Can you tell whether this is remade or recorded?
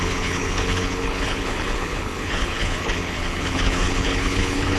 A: remade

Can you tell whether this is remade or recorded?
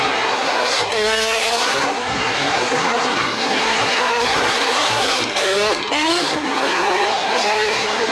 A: remade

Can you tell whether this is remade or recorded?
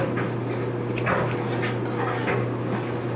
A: recorded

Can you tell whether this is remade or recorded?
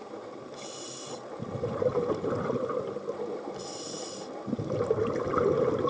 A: recorded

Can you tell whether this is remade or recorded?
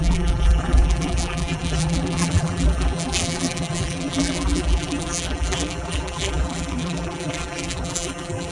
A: remade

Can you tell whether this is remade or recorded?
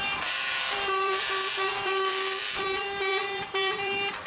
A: remade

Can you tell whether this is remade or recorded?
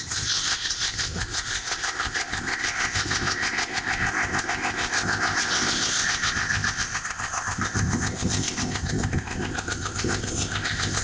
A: remade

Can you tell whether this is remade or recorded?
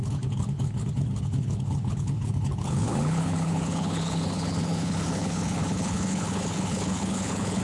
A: remade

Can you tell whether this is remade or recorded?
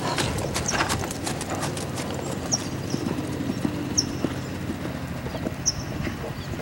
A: recorded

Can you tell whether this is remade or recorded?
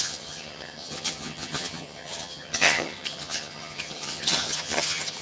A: remade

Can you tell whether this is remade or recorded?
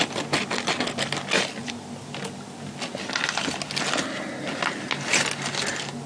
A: recorded